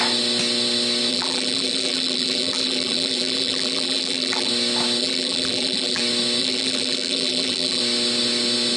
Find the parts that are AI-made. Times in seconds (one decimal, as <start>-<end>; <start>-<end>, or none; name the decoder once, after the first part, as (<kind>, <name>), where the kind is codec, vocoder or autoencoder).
1.1-4.5 (vocoder, BigVGAN v2); 5.0-6.0; 6.4-7.8